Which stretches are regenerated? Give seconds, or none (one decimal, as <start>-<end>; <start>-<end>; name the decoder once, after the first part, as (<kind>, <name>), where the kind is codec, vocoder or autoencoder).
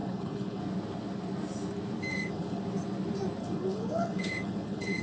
0.0-0.6 (codec, HILCodec); 2.1-2.6; 3.4-5.0